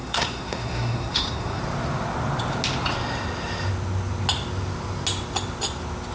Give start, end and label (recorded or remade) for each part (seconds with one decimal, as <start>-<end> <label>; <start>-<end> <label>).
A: 0.0-1.6 remade; 1.6-6.1 recorded